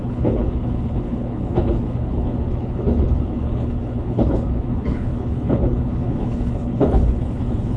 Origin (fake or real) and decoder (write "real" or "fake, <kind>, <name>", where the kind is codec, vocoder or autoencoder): fake, codec, HILCodec